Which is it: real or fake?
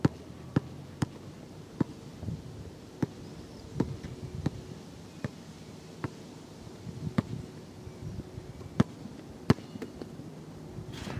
real